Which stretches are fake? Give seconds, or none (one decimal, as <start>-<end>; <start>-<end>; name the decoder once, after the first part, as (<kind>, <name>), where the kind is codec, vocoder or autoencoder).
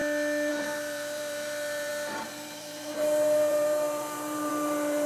0.5-5.1 (vocoder, BigVGAN v2)